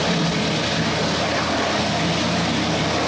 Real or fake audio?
real